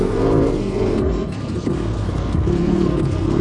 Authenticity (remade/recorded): remade